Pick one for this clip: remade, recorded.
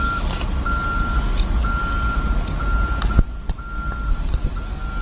recorded